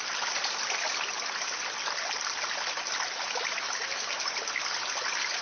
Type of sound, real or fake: real